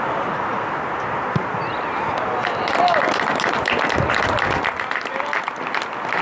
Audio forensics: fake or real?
real